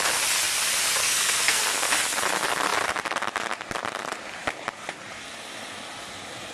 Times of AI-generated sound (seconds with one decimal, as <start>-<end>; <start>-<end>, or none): 1.0-1.9